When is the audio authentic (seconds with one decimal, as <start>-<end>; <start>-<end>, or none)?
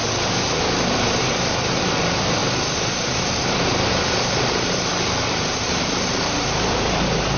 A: 0.0-1.2